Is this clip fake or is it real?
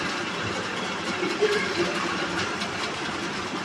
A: fake